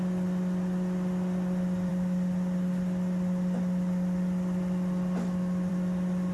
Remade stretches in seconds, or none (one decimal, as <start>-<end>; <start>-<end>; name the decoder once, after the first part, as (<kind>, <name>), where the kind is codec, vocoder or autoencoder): none